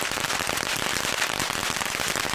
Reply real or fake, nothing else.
fake